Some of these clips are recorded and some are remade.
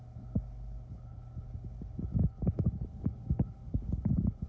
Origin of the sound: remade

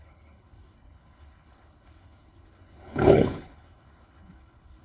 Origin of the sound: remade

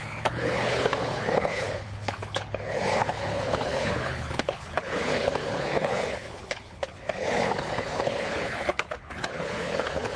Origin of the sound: remade